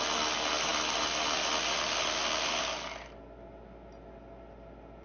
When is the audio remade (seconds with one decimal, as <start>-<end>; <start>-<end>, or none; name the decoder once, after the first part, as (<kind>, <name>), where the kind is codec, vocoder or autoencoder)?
none